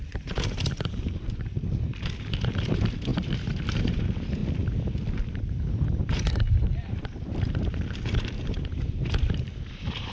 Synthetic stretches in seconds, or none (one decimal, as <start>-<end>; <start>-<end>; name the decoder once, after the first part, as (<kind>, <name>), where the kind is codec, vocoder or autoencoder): 0.0-4.4 (vocoder, BigVGAN v2); 5.3-10.1